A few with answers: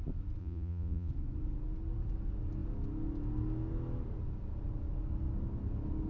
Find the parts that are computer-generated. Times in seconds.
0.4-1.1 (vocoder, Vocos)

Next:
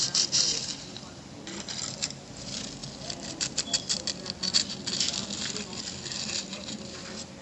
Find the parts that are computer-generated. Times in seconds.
0.0-7.4 (vocoder, BigVGAN v2)

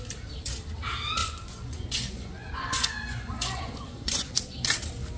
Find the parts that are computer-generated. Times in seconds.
1.2-4.3 (vocoder, Vocos)

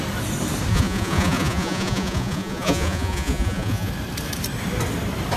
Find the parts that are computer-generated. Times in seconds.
0.7-3.9 (vocoder, Vocos)